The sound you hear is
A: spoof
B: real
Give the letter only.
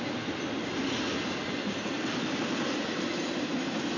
B